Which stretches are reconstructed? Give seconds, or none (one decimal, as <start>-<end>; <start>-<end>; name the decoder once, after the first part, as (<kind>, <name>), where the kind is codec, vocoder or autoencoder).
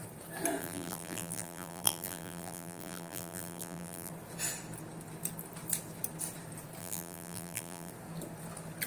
0.6-4.1 (vocoder, BigVGAN v2); 6.8-7.9